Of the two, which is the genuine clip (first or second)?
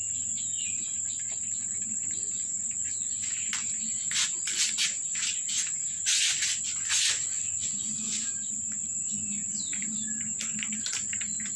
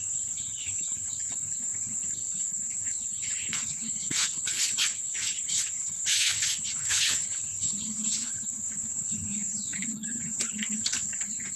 first